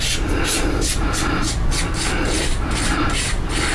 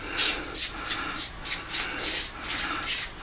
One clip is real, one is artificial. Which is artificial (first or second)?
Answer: first